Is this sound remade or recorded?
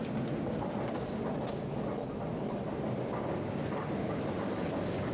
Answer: recorded